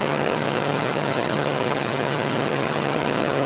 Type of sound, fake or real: fake